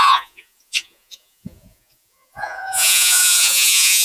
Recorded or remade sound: remade